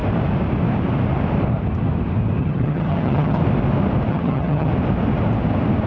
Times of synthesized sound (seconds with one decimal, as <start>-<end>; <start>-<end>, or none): 2.4-3.4; 4.1-4.7